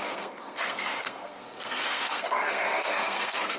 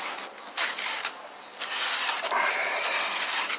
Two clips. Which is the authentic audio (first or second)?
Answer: second